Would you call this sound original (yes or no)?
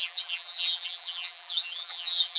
no